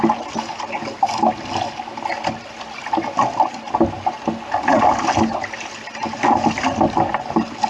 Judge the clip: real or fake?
real